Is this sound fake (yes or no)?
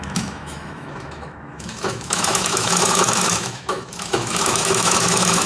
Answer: yes